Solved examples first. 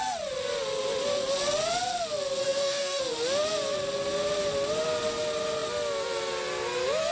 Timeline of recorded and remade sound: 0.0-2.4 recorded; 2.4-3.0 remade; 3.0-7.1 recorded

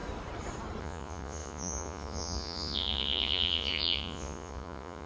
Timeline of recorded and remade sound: 0.0-0.8 recorded; 0.8-5.1 remade

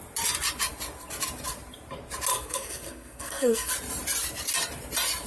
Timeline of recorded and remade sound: 0.0-2.3 recorded; 2.3-3.7 remade; 3.7-5.3 recorded

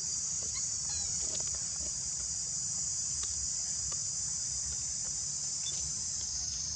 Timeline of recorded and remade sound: 0.0-2.1 remade; 2.1-3.2 recorded; 3.2-6.8 remade

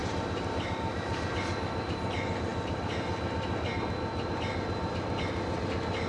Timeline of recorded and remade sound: 0.0-1.2 remade; 1.2-6.1 recorded

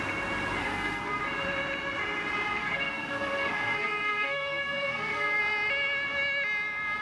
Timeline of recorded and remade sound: 0.0-0.6 recorded; 0.6-1.2 remade; 1.2-2.6 recorded; 2.6-5.4 remade; 5.4-7.0 recorded

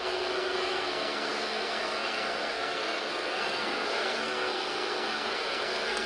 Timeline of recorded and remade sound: 0.0-6.1 remade